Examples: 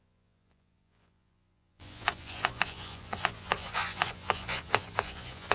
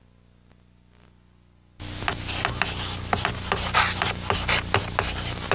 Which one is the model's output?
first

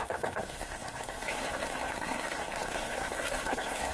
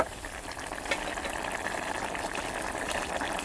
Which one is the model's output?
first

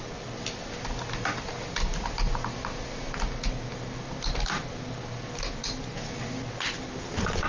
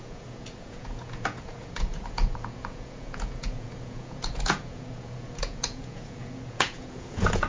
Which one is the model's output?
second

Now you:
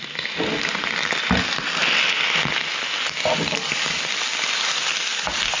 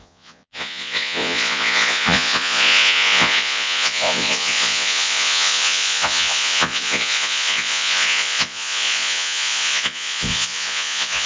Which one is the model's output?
second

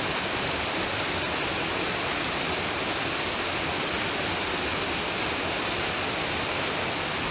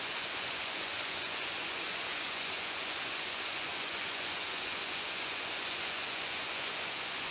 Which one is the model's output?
second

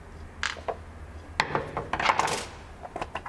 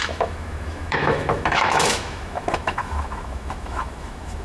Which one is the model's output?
second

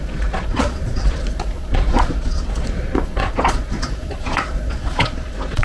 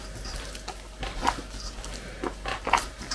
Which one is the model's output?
first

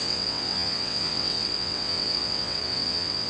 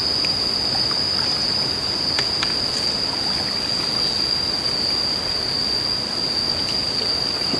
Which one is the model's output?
first